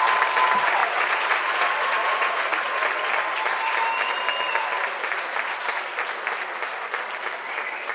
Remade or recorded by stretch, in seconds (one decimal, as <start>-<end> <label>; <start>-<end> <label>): 0.0-0.8 recorded; 0.8-2.9 remade; 2.9-7.9 recorded